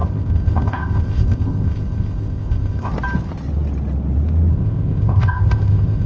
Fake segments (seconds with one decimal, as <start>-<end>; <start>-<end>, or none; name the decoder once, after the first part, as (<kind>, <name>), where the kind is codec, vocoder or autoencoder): 0.0-2.9 (codec, ZipCodec); 4.5-6.1